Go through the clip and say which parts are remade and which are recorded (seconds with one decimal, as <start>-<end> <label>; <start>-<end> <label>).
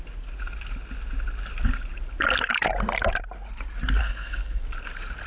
0.0-4.0 recorded; 4.0-4.6 remade; 4.6-5.3 recorded